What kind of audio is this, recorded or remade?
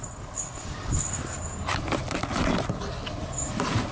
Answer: recorded